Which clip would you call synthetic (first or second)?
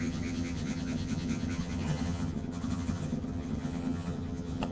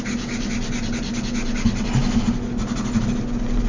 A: first